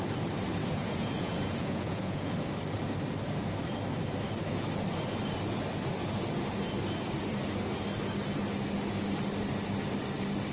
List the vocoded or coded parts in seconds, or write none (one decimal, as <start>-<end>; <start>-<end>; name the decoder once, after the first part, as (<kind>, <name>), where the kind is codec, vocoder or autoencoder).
0.6-2.3 (vocoder, Vocos)